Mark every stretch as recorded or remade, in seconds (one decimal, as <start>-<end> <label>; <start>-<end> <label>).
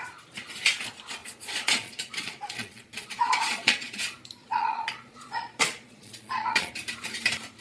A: 0.0-1.2 recorded; 1.2-4.0 remade; 4.0-4.4 recorded; 4.4-6.7 remade; 6.7-7.6 recorded